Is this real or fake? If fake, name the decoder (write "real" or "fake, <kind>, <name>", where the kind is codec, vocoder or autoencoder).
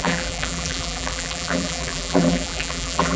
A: fake, vocoder, BigVGAN v2